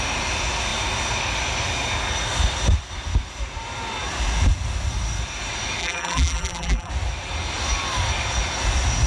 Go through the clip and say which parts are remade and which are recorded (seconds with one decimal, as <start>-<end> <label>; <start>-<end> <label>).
0.0-5.8 recorded; 5.8-6.9 remade; 6.9-9.1 recorded